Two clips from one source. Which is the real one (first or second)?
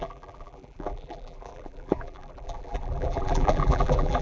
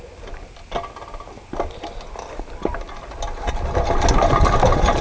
second